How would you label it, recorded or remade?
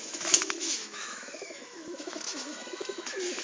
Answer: remade